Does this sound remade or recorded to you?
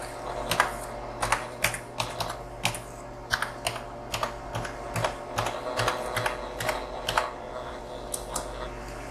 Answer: recorded